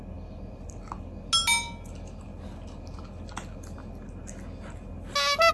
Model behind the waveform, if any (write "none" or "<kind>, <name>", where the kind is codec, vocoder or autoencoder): none